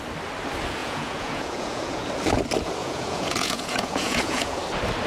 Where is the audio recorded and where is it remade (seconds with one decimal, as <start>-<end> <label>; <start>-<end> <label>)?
0.0-0.8 recorded; 0.8-2.1 remade; 2.1-2.8 recorded; 2.8-4.6 remade; 4.6-5.1 recorded